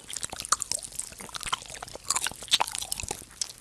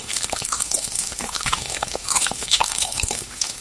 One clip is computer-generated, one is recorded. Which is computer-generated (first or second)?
second